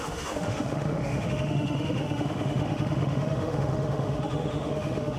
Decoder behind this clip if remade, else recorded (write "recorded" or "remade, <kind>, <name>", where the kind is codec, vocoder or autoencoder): remade, autoencoder, DAC-VAE